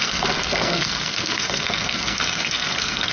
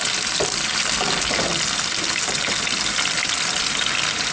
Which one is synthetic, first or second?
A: first